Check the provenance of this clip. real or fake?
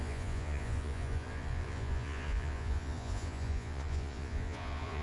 fake